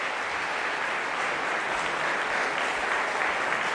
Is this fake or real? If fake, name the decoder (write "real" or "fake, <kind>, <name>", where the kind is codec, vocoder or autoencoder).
real